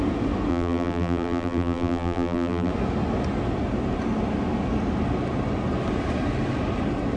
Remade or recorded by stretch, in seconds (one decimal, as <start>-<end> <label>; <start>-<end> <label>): 0.0-0.5 recorded; 0.5-2.7 remade; 2.7-7.2 recorded